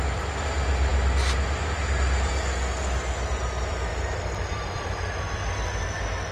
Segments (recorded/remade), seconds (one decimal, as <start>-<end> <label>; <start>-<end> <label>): 0.0-0.9 remade; 0.9-1.6 recorded; 1.6-2.3 remade; 2.3-3.3 recorded; 3.3-6.3 remade